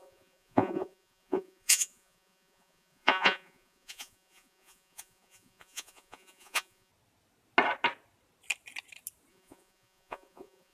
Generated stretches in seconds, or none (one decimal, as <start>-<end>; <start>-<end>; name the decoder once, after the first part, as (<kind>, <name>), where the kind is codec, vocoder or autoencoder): 0.0-6.9 (vocoder, Vocos); 9.3-10.7